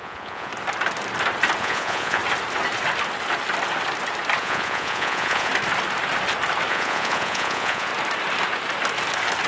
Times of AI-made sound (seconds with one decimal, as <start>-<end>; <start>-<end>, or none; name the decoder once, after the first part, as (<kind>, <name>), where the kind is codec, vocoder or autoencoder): 0.0-0.5 (vocoder, Vocos); 1.6-2.2; 4.4-5.5; 6.7-7.9

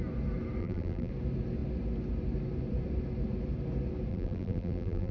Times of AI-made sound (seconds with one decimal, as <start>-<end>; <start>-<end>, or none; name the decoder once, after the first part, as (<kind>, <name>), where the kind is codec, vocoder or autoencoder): 0.6-1.1 (vocoder, BigVGAN v2); 4.1-5.1